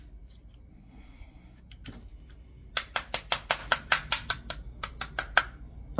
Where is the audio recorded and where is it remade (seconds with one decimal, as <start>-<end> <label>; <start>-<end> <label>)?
0.0-0.7 recorded; 0.7-1.6 remade; 1.6-6.0 recorded